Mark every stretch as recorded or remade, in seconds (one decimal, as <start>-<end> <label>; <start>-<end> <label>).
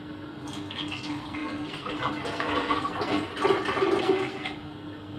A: 0.0-3.3 remade; 3.3-4.0 recorded; 4.0-5.2 remade